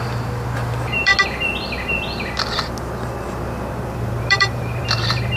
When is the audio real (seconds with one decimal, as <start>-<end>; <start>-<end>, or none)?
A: 1.1-4.3